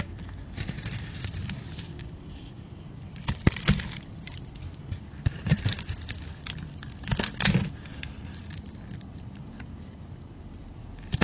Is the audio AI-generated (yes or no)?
yes